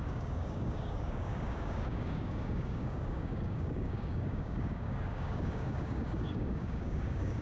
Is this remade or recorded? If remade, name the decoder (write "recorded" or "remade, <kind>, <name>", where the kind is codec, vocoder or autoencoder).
remade, codec, DAC